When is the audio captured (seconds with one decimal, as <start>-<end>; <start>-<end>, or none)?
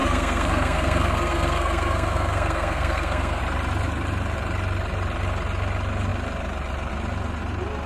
3.4-7.9